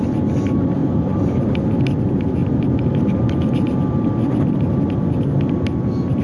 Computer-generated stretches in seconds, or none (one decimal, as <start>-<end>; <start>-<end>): 0.8-1.8